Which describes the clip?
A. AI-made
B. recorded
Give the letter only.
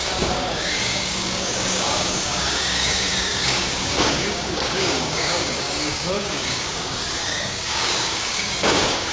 A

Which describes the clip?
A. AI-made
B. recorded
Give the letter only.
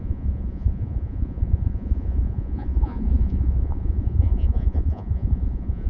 A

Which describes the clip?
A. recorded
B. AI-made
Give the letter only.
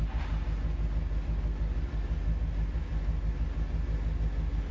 A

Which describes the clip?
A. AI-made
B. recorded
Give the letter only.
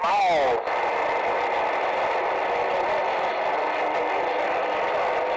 B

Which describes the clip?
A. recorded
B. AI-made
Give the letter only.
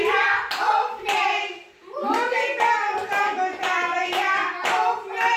A